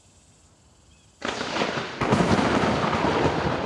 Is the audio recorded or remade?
recorded